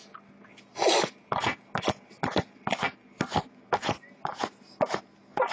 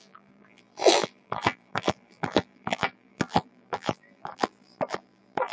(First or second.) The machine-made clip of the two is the second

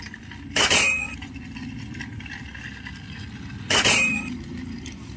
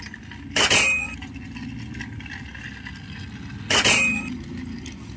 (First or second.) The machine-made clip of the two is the first